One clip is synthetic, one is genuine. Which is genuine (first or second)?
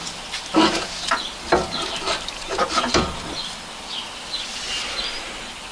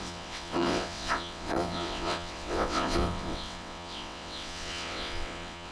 first